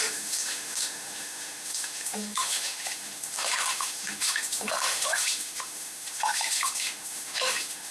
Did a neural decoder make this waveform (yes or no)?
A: yes